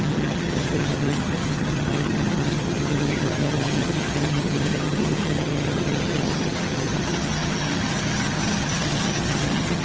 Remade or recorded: remade